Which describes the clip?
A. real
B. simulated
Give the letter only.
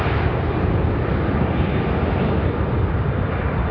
A